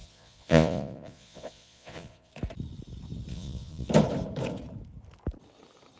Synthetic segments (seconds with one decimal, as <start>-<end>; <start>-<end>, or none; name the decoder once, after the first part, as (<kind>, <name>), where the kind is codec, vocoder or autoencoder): 0.0-2.3 (vocoder, Vocos); 3.3-3.9